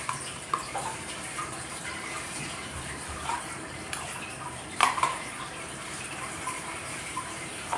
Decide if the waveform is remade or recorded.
remade